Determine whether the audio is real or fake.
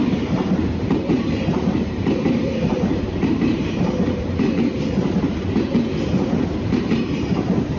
fake